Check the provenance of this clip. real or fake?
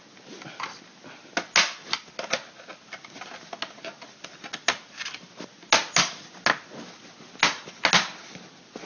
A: real